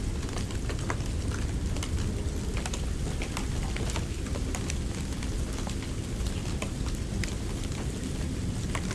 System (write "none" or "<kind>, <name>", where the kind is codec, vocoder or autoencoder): none